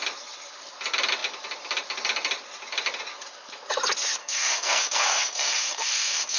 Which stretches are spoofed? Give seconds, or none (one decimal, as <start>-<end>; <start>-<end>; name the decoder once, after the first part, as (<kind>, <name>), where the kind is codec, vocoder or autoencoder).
4.2-6.4 (codec, SNAC)